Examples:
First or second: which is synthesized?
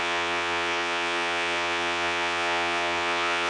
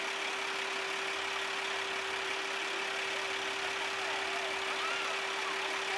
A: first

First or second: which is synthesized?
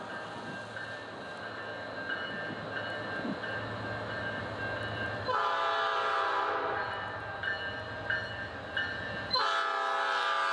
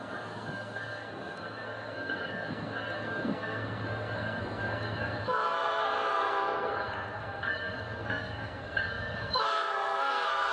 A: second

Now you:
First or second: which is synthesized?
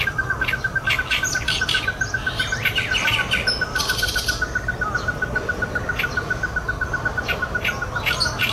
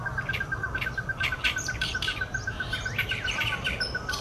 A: second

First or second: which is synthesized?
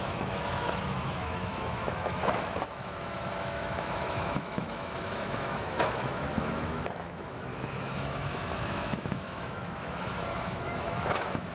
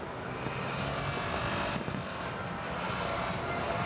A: first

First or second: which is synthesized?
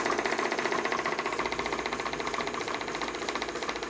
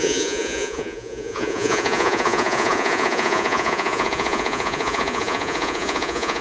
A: second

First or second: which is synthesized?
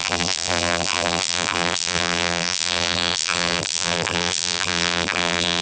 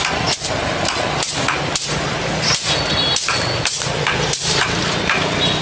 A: first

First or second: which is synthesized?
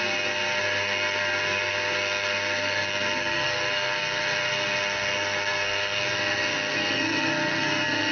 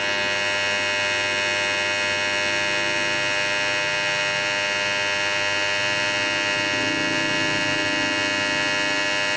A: first